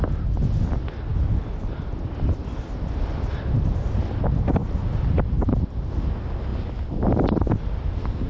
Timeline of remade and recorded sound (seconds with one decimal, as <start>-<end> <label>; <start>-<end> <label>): 0.0-8.3 recorded